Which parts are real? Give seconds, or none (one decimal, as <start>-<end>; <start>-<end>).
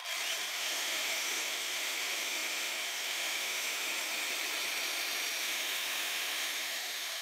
0.0-0.5; 3.9-5.4